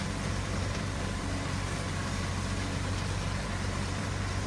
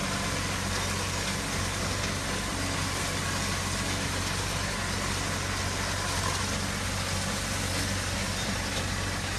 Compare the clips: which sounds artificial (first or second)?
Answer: first